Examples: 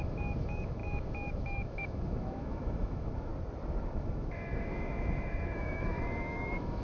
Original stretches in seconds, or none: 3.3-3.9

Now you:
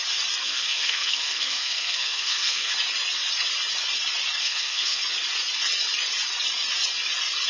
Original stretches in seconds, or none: 0.0-0.4; 2.7-4.4; 5.0-7.5

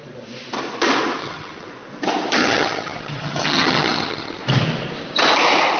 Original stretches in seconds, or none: 0.0-1.2; 1.7-2.4; 4.4-5.8

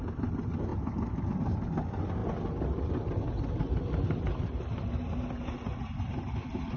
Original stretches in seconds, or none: 0.0-6.8

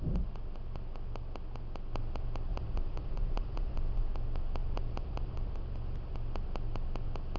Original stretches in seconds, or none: 0.0-2.5; 4.1-4.6; 5.5-7.4

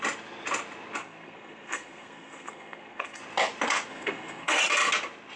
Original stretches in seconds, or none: 0.0-1.0; 3.2-3.9; 4.6-5.4

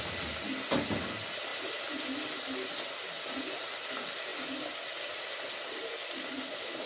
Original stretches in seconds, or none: 0.0-6.9